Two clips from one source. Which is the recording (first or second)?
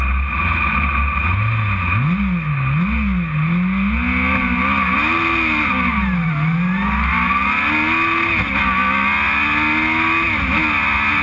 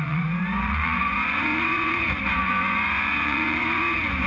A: first